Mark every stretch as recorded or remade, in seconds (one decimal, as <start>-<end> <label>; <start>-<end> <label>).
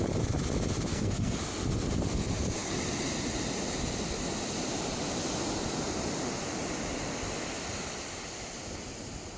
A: 0.0-0.9 recorded; 0.9-1.4 remade; 1.4-9.4 recorded